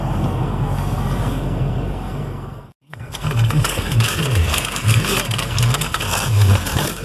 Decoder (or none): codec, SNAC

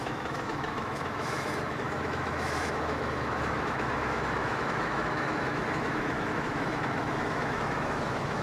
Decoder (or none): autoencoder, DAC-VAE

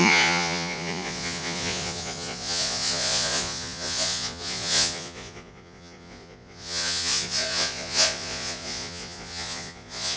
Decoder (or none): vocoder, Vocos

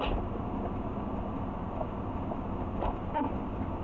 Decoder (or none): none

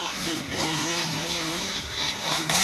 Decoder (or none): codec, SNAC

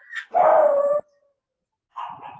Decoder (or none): none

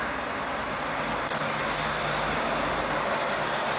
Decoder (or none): none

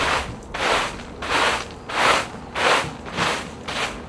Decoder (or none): none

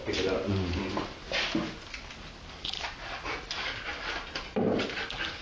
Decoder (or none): none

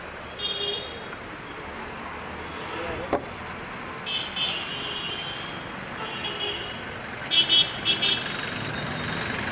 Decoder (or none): none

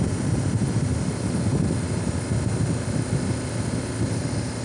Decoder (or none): none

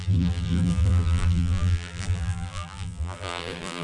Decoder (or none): vocoder, BigVGAN v2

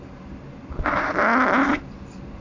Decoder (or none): none